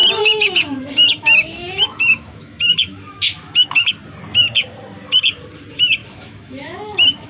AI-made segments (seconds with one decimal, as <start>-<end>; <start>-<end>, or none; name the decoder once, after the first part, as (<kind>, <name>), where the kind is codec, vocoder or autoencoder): 0.0-3.9 (autoencoder, DAC-VAE); 6.0-7.3